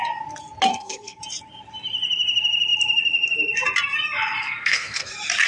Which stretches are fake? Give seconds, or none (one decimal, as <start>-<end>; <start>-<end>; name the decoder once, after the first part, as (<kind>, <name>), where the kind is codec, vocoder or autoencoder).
0.7-1.2 (codec, SNAC); 4.4-5.1